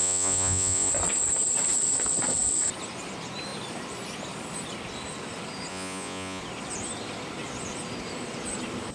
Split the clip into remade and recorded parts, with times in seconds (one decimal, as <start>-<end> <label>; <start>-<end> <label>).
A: 0.0-0.9 remade; 0.9-5.7 recorded; 5.7-6.4 remade; 6.4-8.9 recorded